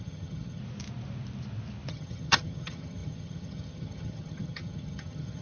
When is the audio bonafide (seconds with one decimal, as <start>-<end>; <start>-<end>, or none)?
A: 0.6-1.9